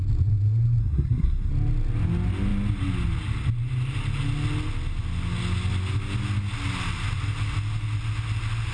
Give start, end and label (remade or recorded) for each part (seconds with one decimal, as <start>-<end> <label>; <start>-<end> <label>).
0.0-0.8 recorded; 0.8-1.5 remade; 1.5-8.7 recorded